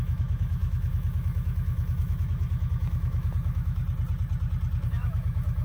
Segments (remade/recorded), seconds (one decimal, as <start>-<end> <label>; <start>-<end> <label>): 0.0-3.8 remade; 3.8-4.9 recorded; 4.9-5.6 remade